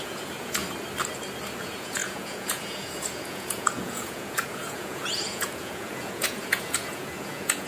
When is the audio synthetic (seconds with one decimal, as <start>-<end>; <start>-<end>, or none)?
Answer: 0.0-0.6; 1.6-7.7